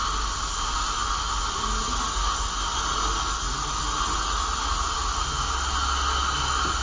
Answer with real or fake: real